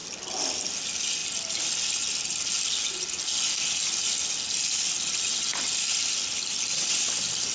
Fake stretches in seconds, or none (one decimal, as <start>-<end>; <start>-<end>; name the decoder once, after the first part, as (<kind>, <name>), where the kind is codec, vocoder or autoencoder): none